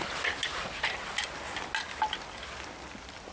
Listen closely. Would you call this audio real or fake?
real